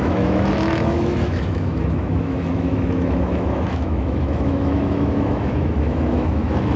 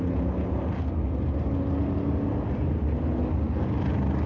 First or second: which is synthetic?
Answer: first